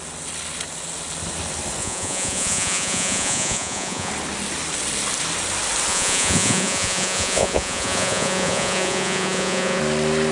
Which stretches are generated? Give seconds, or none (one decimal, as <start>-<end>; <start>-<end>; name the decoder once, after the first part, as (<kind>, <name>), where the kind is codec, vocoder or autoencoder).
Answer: 1.8-4.1 (vocoder, Vocos); 5.9-9.8